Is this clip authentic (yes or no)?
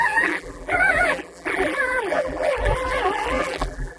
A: no